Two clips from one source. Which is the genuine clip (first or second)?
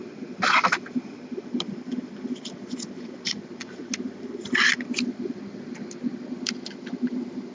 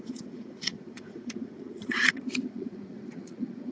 first